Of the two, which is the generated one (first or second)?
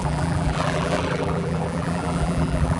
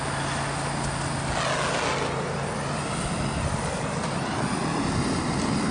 first